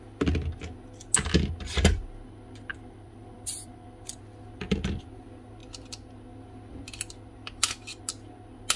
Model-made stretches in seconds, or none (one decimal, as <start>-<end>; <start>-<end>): 2.7-4.2